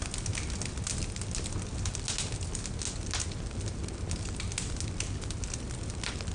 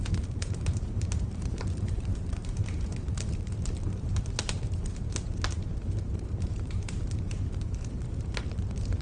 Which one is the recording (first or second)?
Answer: first